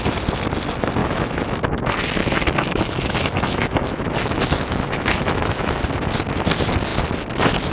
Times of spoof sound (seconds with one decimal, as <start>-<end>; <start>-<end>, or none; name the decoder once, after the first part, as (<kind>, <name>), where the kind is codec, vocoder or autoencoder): 1.0-1.6 (autoencoder, DAC-VAE); 2.2-5.8